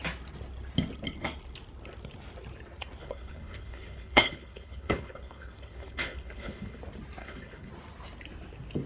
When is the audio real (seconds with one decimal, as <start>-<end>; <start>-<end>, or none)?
0.0-3.0; 6.8-7.2; 7.7-8.9